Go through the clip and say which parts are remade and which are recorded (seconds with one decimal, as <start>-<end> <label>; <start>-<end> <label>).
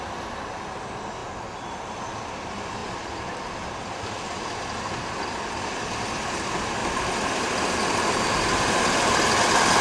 0.0-2.8 recorded; 2.8-4.0 remade; 4.0-9.8 recorded